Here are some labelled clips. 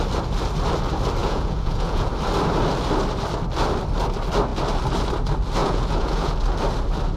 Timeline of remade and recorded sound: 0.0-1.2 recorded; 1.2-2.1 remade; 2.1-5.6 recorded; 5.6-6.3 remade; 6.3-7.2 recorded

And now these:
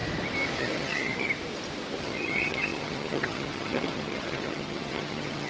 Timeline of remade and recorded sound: 0.0-0.6 recorded; 0.6-1.3 remade; 1.3-2.0 recorded; 2.0-5.5 remade

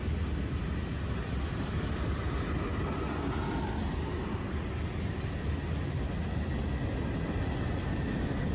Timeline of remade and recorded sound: 0.0-8.5 recorded

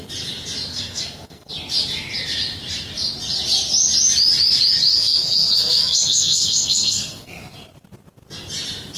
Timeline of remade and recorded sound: 0.0-0.7 recorded; 0.7-1.5 remade; 1.5-4.9 recorded; 4.9-7.4 remade; 7.4-9.0 recorded

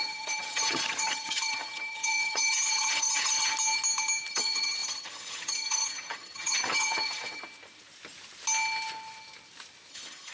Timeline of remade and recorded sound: 0.0-3.5 remade; 3.5-4.3 recorded; 4.3-7.4 remade; 7.4-9.9 recorded; 9.9-10.3 remade

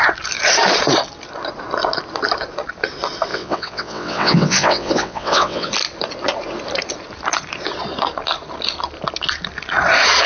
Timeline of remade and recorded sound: 0.0-3.3 recorded; 3.3-5.7 remade; 5.7-10.3 recorded

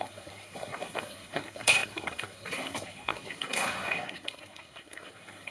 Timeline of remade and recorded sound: 0.0-5.5 remade